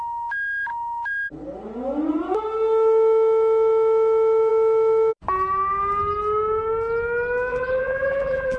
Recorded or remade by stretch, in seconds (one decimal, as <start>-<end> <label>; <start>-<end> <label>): 0.0-7.5 recorded; 7.5-8.6 remade